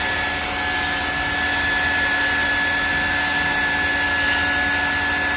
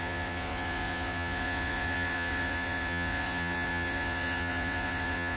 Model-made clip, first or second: second